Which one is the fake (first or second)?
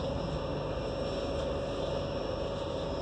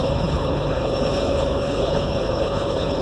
second